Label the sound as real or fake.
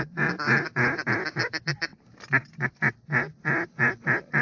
real